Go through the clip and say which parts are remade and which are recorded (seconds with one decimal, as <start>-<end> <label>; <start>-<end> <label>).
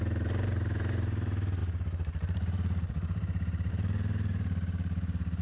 0.0-5.4 remade